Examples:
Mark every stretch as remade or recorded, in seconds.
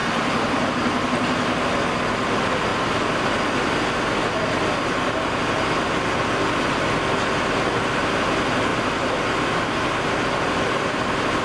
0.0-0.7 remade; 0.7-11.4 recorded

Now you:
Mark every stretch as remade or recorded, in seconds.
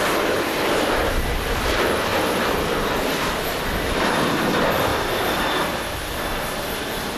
0.0-4.9 remade; 4.9-7.2 recorded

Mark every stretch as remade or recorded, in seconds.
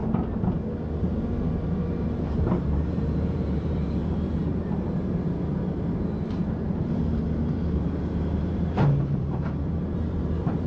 0.0-1.2 recorded; 1.2-10.7 remade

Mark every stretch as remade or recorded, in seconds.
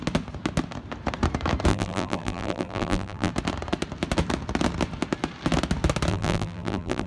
0.0-1.7 recorded; 1.7-3.3 remade; 3.3-6.1 recorded; 6.1-7.1 remade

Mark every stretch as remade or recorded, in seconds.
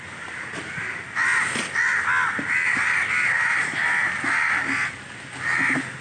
0.0-6.0 recorded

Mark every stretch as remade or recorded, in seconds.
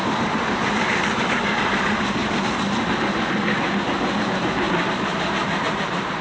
0.0-2.2 remade; 2.2-4.2 recorded; 4.2-6.2 remade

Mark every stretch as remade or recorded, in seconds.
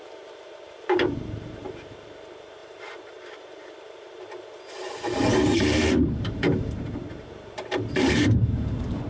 0.0-9.1 remade